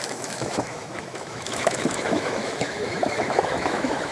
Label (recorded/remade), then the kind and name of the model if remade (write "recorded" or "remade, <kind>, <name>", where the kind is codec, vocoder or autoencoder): remade, autoencoder, DAC-VAE